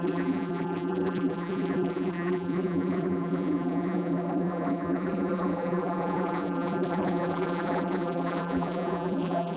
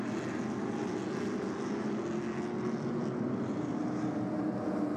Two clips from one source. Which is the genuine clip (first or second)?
second